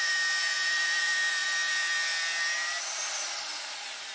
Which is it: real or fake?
fake